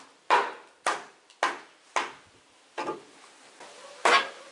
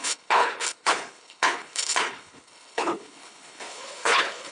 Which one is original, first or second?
first